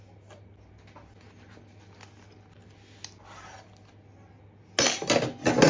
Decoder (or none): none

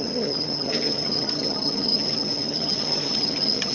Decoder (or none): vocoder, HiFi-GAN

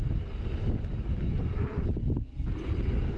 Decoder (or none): none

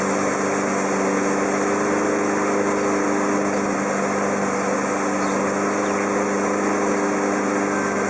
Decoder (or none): none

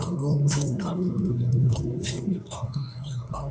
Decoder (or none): codec, SNAC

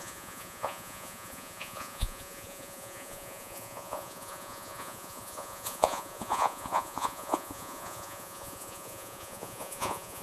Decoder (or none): vocoder, Vocos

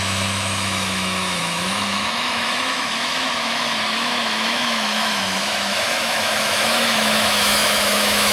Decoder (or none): autoencoder, DAC-VAE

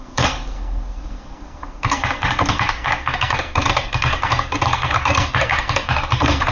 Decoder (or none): codec, SNAC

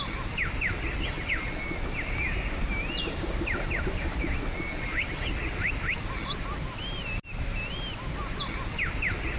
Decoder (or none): none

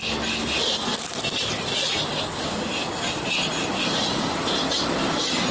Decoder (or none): none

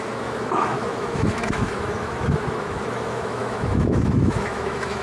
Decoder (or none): autoencoder, DAC-VAE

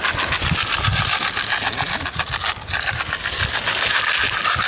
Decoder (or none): none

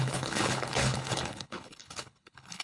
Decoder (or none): codec, HILCodec